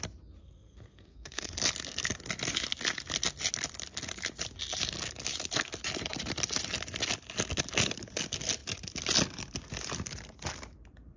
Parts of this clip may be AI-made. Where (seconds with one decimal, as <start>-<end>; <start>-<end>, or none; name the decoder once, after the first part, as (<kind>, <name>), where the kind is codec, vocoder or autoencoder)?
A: 0.4-1.5 (codec, SNAC)